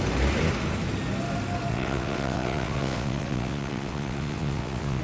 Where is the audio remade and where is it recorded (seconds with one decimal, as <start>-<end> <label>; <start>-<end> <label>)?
0.0-1.7 recorded; 1.7-5.0 remade